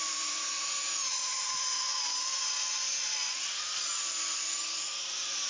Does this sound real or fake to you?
fake